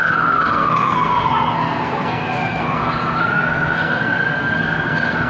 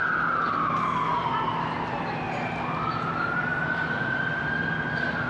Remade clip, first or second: first